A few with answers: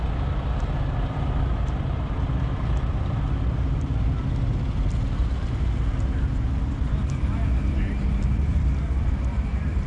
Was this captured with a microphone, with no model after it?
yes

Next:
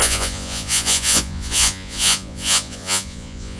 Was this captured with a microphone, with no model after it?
no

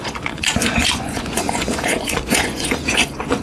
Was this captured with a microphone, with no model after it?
no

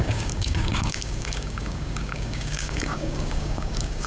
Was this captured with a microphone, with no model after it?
no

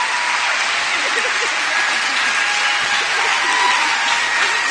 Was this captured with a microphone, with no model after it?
yes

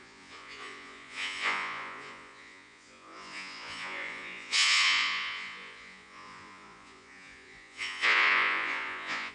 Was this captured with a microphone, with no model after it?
no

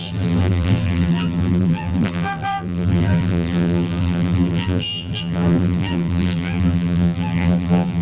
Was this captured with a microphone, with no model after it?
no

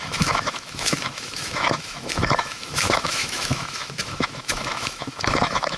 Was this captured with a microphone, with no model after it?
no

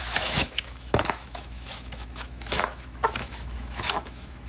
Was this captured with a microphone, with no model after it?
no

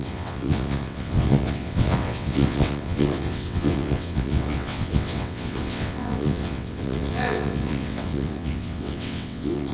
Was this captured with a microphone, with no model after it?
no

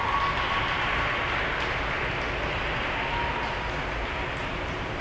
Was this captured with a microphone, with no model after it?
yes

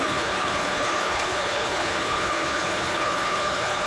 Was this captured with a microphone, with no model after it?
no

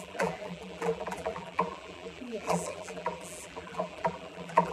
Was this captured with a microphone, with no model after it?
no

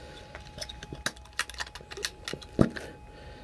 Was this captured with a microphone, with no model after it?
yes